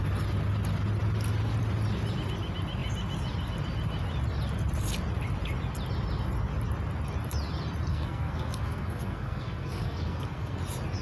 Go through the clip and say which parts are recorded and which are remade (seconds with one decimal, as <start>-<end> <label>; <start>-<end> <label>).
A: 0.0-7.9 recorded; 7.9-10.6 remade; 10.6-11.0 recorded